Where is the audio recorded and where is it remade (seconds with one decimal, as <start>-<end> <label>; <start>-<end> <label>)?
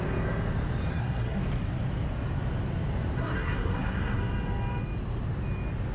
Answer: 0.0-0.9 recorded; 0.9-1.4 remade; 1.4-3.2 recorded; 3.2-4.2 remade; 4.2-5.9 recorded